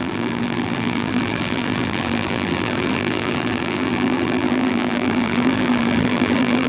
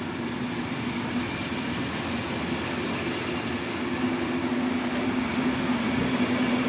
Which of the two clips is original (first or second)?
second